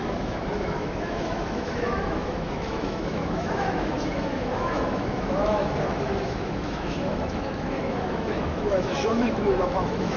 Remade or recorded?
remade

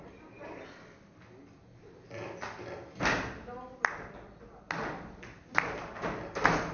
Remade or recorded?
recorded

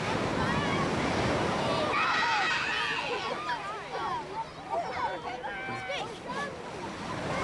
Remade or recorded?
recorded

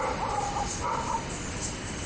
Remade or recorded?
recorded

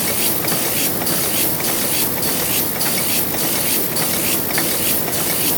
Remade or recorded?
recorded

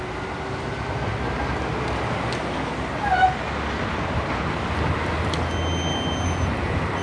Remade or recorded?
recorded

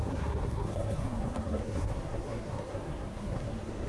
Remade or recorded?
remade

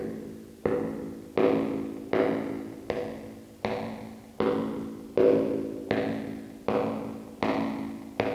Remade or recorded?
recorded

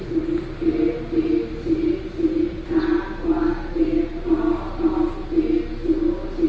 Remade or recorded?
recorded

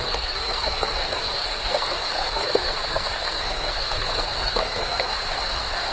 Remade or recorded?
remade